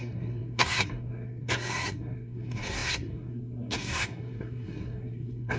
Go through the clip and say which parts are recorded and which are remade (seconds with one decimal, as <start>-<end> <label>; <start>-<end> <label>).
0.0-5.6 remade